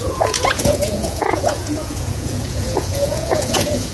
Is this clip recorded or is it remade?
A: remade